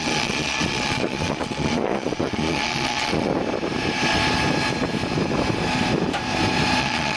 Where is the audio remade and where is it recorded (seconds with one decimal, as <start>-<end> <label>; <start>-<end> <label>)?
0.0-3.3 remade; 3.3-6.8 recorded; 6.8-7.2 remade